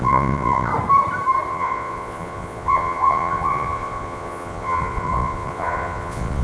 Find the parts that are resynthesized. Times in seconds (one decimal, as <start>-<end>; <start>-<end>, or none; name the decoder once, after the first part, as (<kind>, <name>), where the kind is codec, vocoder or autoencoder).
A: 0.0-0.7 (vocoder, Vocos); 1.5-6.4